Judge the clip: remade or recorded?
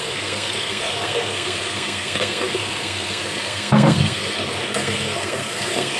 remade